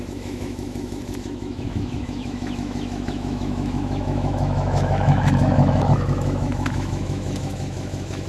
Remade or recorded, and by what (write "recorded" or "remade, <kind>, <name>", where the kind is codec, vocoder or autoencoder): remade, autoencoder, DAC-VAE